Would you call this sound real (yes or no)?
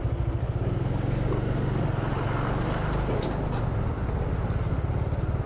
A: yes